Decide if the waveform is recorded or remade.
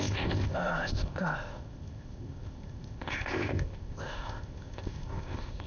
remade